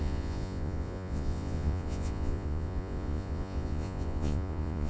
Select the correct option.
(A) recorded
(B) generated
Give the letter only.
B